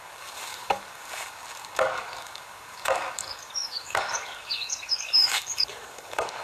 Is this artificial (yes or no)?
yes